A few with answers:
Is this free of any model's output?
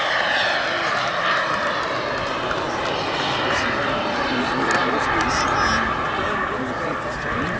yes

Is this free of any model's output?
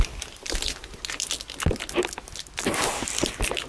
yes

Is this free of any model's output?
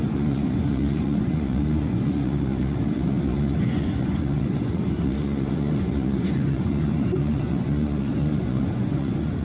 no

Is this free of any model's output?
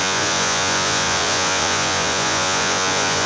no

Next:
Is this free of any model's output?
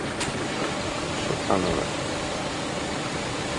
yes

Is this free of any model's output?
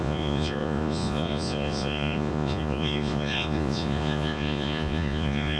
no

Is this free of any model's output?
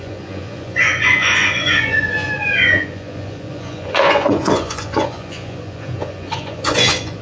no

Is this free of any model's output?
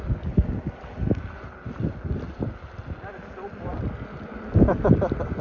yes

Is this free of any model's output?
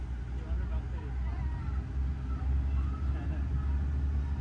yes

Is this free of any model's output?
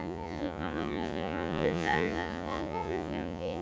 no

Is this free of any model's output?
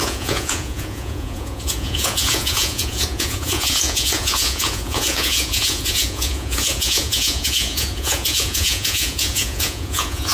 no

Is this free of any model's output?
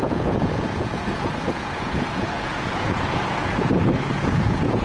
no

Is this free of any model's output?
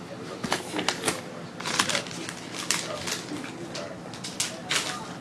yes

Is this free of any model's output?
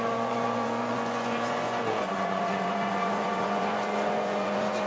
no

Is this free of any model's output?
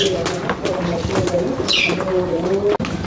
yes